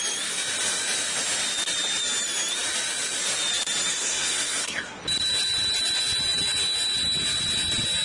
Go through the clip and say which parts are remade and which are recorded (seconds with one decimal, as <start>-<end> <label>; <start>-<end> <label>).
0.0-3.9 recorded; 3.9-5.0 remade; 5.0-8.0 recorded